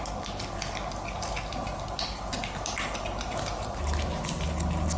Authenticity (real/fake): real